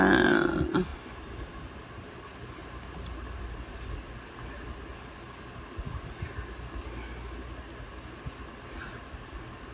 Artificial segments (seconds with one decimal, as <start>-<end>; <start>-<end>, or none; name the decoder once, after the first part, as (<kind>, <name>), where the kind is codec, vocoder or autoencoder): 0.9-1.8 (vocoder, BigVGAN v2); 2.6-3.4